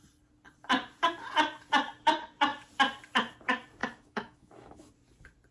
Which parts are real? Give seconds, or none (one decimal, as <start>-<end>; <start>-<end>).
0.0-3.8; 4.9-5.5